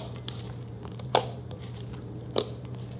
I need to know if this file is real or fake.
fake